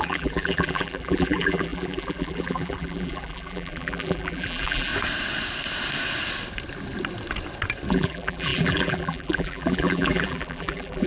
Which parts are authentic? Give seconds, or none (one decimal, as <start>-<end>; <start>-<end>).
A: 4.9-7.9